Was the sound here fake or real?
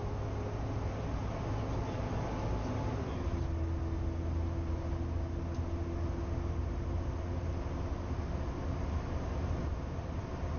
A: real